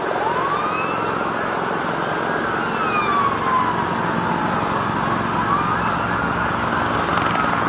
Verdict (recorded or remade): recorded